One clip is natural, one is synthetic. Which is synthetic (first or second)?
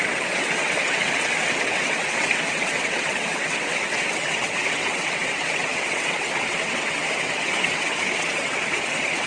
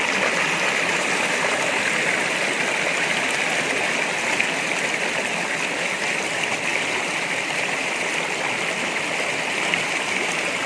first